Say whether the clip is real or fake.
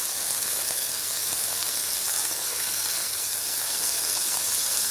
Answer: fake